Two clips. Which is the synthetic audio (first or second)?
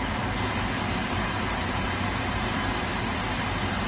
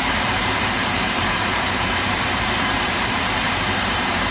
second